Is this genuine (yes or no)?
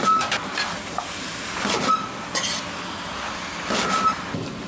yes